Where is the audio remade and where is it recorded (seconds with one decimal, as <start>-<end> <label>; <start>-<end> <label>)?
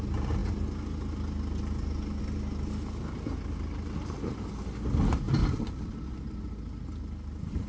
0.0-5.4 recorded; 5.4-6.1 remade; 6.1-7.7 recorded